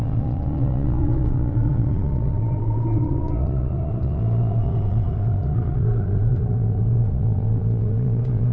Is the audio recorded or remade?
remade